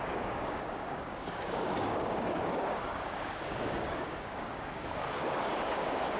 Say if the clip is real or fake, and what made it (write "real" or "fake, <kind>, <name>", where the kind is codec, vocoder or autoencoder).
fake, codec, DAC